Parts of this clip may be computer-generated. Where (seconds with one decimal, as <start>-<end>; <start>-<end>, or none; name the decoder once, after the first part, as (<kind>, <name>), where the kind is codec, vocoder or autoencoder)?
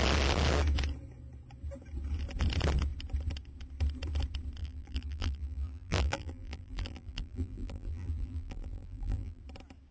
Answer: 4.6-9.4 (vocoder, BigVGAN v2)